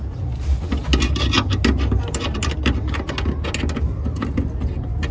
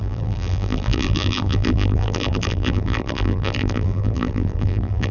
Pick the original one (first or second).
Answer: first